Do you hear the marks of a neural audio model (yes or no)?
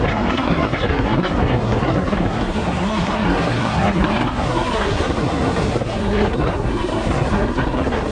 yes